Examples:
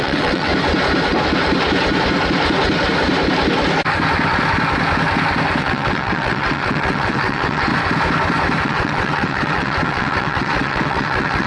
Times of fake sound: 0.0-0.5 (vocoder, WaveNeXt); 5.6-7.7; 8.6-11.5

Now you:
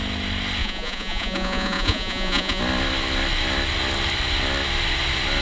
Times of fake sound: 0.6-2.6 (vocoder, Vocos)

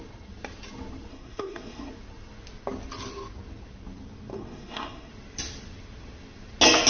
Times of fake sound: 1.1-1.9 (codec, SNAC); 4.3-5.1